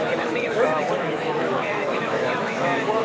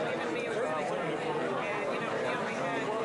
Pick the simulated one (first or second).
first